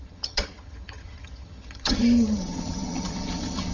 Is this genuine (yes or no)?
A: no